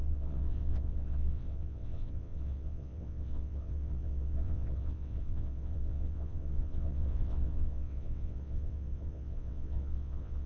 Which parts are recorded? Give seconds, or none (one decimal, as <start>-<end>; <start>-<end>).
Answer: none